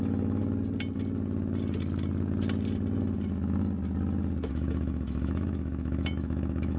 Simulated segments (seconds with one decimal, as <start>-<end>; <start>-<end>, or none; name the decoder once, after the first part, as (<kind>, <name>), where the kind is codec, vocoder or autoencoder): 0.0-0.4 (autoencoder, DAC-VAE); 4.5-6.8